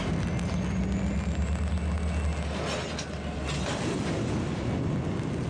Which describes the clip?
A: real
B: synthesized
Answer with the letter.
A